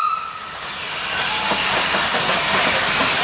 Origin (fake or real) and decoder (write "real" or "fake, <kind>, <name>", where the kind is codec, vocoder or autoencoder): real